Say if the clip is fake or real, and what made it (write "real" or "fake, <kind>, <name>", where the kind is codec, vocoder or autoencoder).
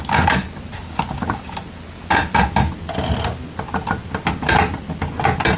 real